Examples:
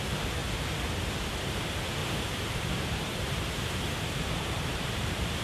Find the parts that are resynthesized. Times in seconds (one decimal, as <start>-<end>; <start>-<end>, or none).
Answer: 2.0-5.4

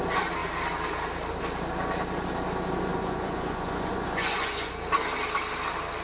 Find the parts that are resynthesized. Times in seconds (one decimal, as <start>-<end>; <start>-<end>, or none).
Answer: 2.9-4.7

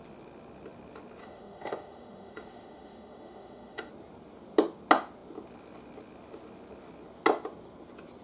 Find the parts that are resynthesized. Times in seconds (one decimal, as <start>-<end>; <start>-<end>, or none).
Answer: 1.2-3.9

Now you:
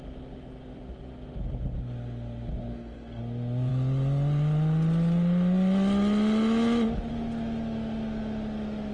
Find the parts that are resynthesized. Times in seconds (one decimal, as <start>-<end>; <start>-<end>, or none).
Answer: 2.7-3.2